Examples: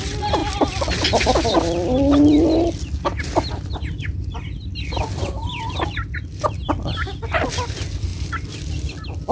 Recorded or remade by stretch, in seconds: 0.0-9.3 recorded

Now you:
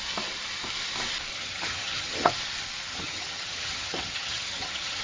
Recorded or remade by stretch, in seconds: 0.0-1.3 recorded; 1.3-2.3 remade; 2.3-2.9 recorded; 2.9-5.0 remade

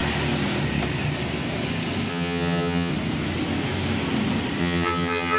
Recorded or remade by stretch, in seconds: 0.0-2.1 recorded; 2.1-2.9 remade; 2.9-4.6 recorded; 4.6-5.4 remade

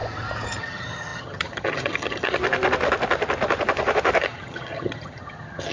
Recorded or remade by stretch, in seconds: 0.0-0.6 recorded; 0.6-2.4 remade; 2.4-4.2 recorded; 4.2-5.7 remade

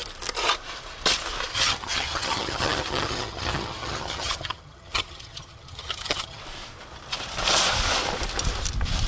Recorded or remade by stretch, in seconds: 0.0-1.5 recorded; 1.5-6.4 remade; 6.4-9.1 recorded

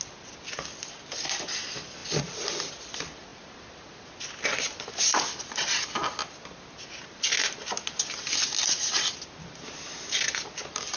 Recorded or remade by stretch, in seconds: 0.0-11.0 recorded

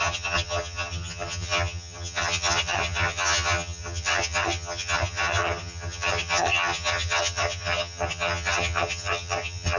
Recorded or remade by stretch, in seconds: 0.0-9.8 remade

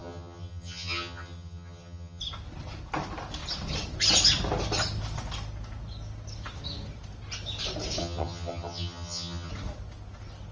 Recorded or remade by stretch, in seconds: 0.0-2.2 remade; 2.2-8.0 recorded; 8.0-9.5 remade; 9.5-10.5 recorded